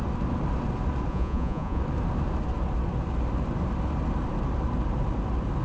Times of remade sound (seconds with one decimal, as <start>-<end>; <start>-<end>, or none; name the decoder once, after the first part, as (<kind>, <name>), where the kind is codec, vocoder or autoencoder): 1.1-1.8 (vocoder, Vocos)